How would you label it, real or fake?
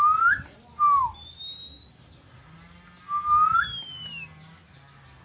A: real